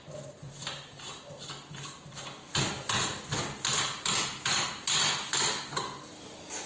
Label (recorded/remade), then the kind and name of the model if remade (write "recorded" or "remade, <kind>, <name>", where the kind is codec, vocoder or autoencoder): recorded